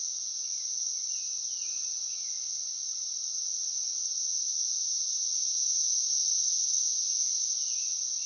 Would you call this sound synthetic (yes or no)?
no